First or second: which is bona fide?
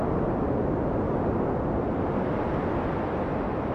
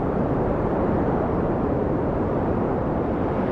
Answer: first